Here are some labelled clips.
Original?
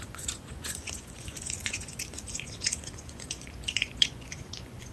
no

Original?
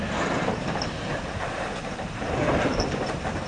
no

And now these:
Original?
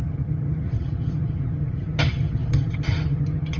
no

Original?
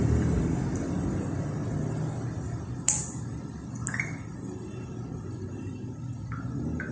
yes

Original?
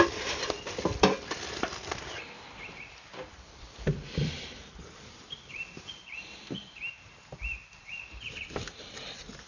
no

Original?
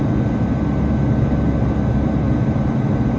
yes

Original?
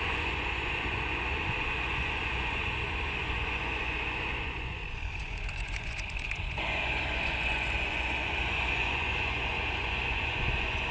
no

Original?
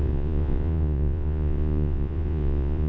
no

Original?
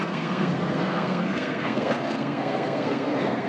no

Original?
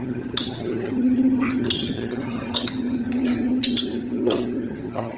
no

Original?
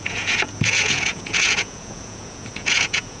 no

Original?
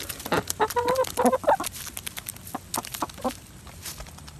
yes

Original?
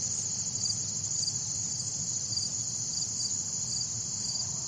yes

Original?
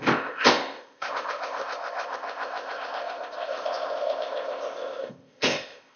no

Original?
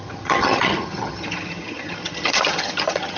no